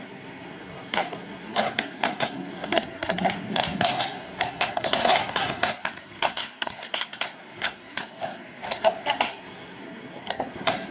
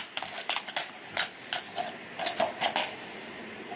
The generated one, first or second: first